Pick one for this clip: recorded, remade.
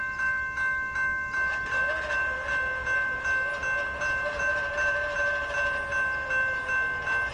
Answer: recorded